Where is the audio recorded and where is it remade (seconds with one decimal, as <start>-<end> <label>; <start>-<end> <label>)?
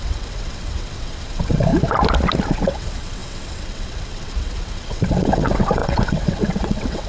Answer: 0.0-1.7 remade; 1.7-2.5 recorded; 2.5-7.1 remade